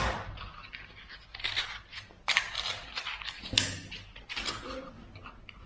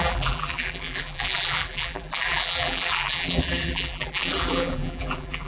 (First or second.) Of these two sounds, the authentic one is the first